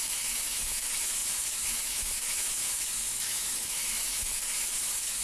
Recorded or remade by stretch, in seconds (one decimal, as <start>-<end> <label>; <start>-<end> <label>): 0.0-5.2 remade